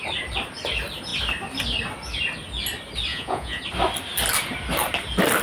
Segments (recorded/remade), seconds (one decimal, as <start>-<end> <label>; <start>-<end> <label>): 0.0-3.1 recorded; 3.1-3.6 remade; 3.6-5.4 recorded